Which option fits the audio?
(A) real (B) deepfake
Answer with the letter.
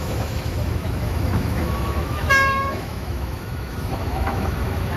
B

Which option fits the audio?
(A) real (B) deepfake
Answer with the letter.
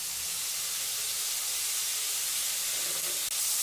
A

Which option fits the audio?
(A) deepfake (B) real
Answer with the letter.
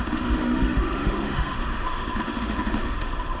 A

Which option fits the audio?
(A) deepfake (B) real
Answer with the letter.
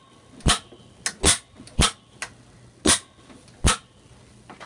B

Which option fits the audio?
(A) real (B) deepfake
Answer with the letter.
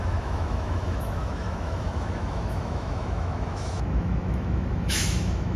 B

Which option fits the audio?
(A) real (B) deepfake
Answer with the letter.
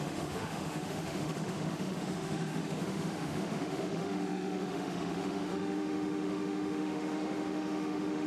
B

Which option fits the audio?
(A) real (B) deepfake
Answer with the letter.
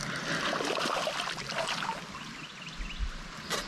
A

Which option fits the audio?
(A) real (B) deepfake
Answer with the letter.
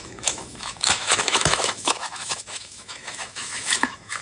B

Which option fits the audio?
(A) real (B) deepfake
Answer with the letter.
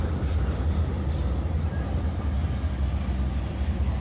A